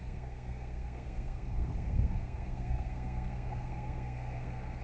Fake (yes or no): yes